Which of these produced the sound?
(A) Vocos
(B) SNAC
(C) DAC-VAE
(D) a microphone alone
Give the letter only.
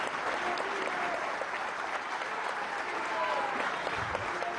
D